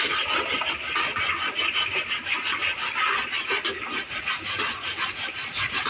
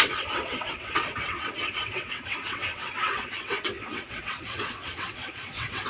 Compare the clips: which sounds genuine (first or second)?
first